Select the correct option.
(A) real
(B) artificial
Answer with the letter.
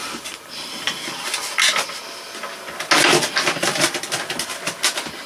A